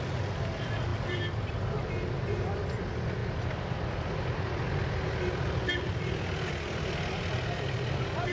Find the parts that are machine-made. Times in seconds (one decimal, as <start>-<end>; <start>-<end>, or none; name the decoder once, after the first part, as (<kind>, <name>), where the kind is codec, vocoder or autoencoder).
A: none